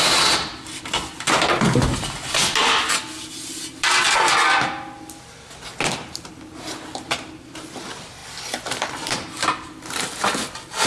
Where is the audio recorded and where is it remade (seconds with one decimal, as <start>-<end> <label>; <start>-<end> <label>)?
0.0-5.7 remade; 5.7-7.4 recorded; 7.4-10.9 remade